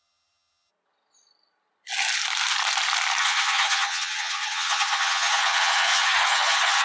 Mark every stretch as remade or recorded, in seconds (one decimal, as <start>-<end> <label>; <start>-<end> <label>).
0.0-0.7 remade; 0.7-3.2 recorded; 3.2-6.8 remade